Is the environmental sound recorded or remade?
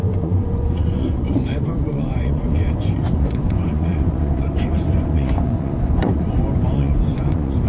remade